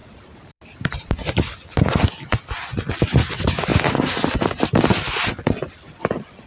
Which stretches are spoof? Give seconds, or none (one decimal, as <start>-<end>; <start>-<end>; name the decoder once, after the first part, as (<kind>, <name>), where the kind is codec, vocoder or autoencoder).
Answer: 0.0-2.0 (vocoder, BigVGAN v2)